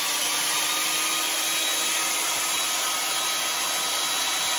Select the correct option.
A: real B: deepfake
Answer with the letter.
A